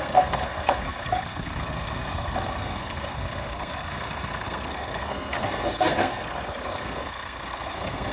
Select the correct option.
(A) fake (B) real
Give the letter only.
A